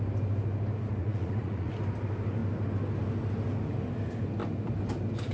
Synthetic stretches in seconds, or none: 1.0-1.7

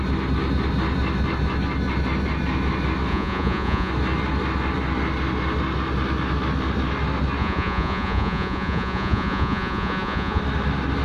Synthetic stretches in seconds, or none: 3.1-3.9; 7.4-10.4

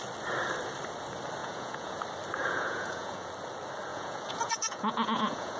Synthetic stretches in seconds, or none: 1.4-2.0; 2.4-3.3; 3.9-5.6

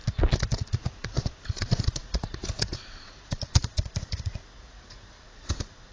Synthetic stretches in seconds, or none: 0.7-5.9

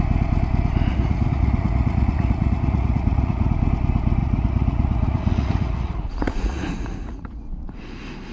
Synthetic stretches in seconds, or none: 0.9-3.5; 4.2-7.8

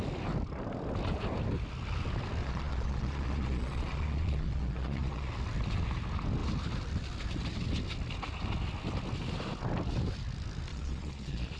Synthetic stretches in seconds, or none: 2.4-5.3; 10.7-11.6